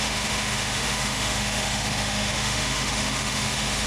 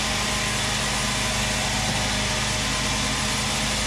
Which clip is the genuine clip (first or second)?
second